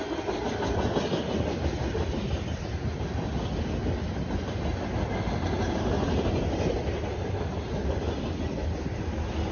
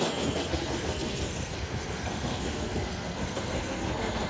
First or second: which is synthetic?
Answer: second